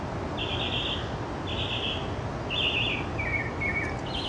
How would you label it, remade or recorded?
recorded